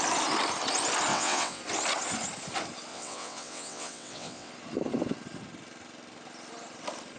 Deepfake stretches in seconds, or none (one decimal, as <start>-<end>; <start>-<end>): 1.1-1.6; 2.9-4.5